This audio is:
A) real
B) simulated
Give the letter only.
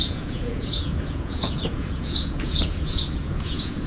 B